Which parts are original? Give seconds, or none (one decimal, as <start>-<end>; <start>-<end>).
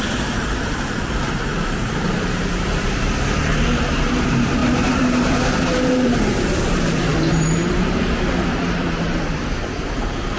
none